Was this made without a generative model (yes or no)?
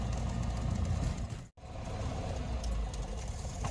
yes